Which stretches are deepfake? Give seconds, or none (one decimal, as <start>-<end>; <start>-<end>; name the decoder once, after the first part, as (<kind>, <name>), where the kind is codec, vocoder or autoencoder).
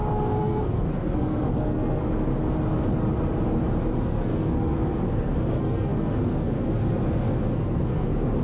0.0-2.3 (codec, SNAC); 4.0-8.4